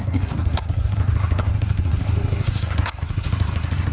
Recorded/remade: remade